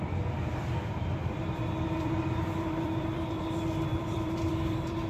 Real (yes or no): no